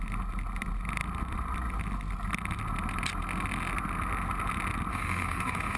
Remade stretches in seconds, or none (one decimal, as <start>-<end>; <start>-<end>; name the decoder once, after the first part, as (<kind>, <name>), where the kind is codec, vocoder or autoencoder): 4.9-5.8 (autoencoder, DAC-VAE)